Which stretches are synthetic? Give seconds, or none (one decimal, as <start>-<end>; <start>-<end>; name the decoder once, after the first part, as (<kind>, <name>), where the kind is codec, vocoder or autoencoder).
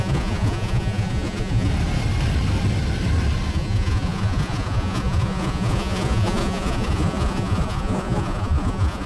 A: 0.0-1.7 (vocoder, Vocos); 3.5-9.1